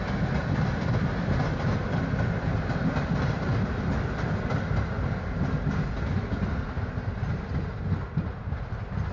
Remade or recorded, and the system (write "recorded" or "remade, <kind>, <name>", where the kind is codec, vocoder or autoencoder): recorded